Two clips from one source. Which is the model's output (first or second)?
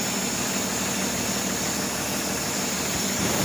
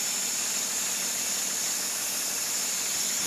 second